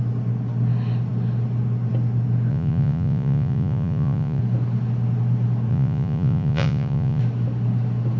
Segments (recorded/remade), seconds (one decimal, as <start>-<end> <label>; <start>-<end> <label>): 0.0-2.5 recorded; 2.5-4.4 remade; 4.4-5.7 recorded; 5.7-7.2 remade; 7.2-8.2 recorded

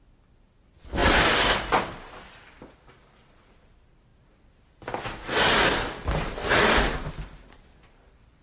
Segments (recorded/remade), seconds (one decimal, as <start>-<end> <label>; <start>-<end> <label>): 0.0-8.4 recorded

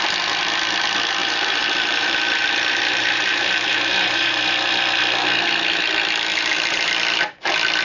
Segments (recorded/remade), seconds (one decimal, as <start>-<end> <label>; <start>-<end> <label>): 0.0-1.2 recorded; 1.2-4.4 remade; 4.4-6.3 recorded; 6.3-6.9 remade; 6.9-7.8 recorded

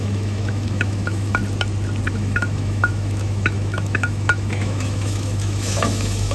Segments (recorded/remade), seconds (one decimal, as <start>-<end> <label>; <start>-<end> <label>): 0.0-1.4 remade; 1.4-2.1 recorded; 2.1-6.3 remade

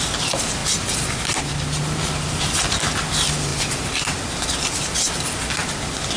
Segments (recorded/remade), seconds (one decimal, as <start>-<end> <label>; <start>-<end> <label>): 0.0-6.2 recorded